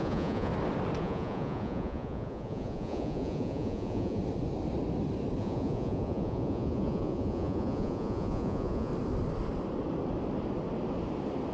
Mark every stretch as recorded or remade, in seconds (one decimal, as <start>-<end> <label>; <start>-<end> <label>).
0.0-0.5 remade; 0.5-1.0 recorded; 1.0-4.2 remade; 4.2-5.4 recorded; 5.4-8.9 remade; 8.9-11.5 recorded